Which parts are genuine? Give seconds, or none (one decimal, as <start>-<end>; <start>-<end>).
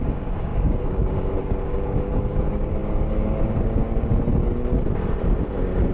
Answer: 4.1-5.9